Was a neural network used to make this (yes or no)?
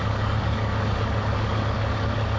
yes